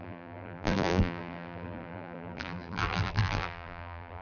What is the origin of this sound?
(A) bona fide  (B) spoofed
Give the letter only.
B